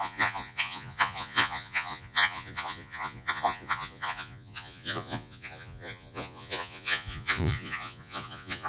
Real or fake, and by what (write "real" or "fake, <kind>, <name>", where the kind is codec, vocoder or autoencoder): fake, vocoder, Vocos